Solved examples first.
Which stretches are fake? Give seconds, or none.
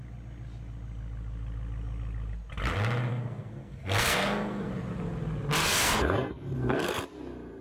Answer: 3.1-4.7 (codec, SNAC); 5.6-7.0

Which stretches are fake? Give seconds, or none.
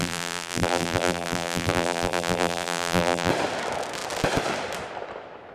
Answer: 0.0-3.3 (vocoder, BigVGAN v2)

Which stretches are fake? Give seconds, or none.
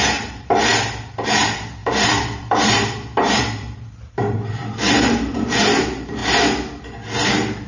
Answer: 0.0-0.7 (vocoder, BigVGAN v2); 1.4-6.2; 7.3-7.7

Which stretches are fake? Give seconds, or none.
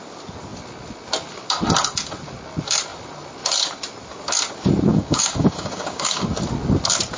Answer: 4.9-6.4 (codec, DAC)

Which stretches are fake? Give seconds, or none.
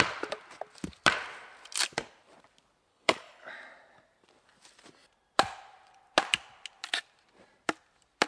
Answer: 2.9-3.5 (codec, HILCodec)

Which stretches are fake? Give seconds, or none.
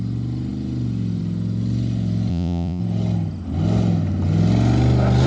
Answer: 2.3-2.8 (vocoder, Vocos)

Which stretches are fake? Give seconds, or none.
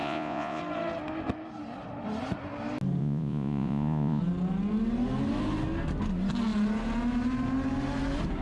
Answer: 0.0-0.6 (vocoder, Vocos); 3.0-4.2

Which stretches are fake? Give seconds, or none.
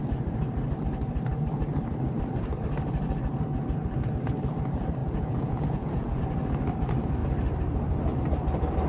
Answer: 5.0-6.2 (vocoder, Vocos)